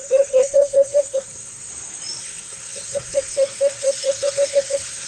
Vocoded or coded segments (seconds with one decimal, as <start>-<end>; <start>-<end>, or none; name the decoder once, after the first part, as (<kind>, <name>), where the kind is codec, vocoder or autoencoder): 0.0-1.7 (codec, SNAC); 2.2-5.1